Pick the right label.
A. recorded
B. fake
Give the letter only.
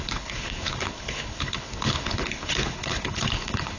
B